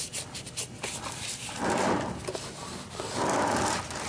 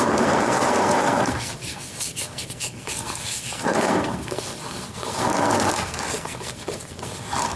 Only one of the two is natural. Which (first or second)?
first